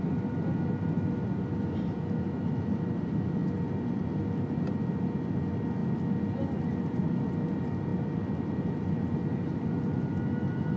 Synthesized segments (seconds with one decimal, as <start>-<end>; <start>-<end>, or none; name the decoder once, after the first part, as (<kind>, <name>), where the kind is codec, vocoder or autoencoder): none